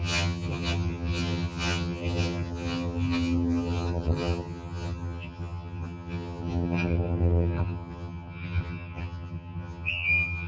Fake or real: fake